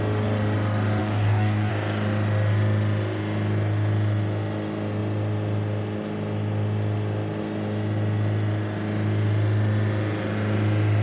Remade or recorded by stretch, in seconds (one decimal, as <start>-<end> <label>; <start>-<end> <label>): 0.0-1.0 recorded; 1.0-1.7 remade; 1.7-11.0 recorded